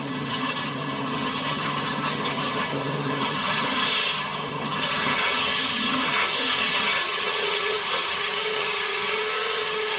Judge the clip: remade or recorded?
remade